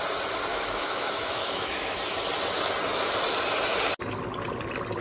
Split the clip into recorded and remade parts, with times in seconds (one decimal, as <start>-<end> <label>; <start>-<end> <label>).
0.0-0.5 recorded; 0.5-2.0 remade; 2.0-5.0 recorded